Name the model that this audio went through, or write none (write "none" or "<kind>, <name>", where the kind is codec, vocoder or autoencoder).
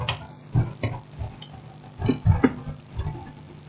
none